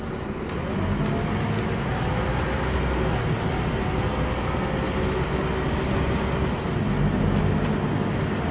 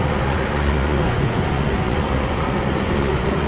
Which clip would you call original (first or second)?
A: first